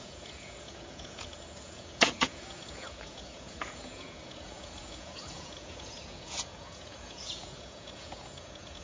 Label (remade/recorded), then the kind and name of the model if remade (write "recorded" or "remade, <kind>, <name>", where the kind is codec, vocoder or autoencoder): remade, vocoder, Vocos